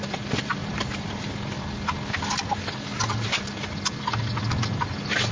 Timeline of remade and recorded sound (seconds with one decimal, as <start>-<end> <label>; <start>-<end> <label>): 0.0-5.3 recorded